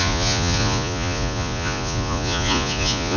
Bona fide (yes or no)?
no